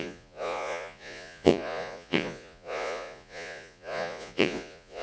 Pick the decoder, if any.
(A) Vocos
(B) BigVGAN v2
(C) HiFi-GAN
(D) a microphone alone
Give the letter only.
A